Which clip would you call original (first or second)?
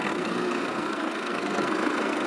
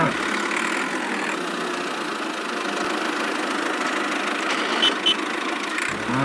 second